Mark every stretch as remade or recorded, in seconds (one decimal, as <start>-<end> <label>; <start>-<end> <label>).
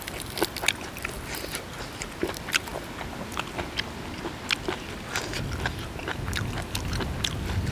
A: 0.0-7.7 recorded